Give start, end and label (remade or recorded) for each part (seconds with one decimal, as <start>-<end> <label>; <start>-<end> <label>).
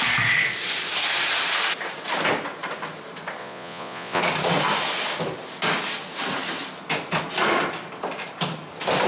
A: 0.0-3.4 recorded; 3.4-4.2 remade; 4.2-9.1 recorded